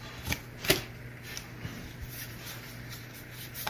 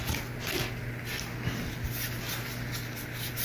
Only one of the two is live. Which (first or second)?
second